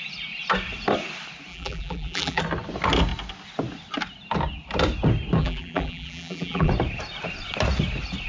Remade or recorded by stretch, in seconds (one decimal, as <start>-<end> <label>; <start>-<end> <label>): 0.0-1.5 recorded; 1.5-2.4 remade; 2.4-5.4 recorded; 5.4-6.7 remade; 6.7-8.3 recorded